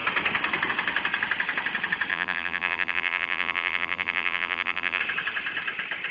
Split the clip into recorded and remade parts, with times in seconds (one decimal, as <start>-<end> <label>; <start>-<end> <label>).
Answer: 0.0-2.1 recorded; 2.1-5.0 remade; 5.0-6.1 recorded